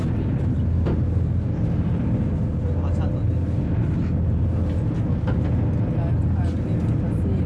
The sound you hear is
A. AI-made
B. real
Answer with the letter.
B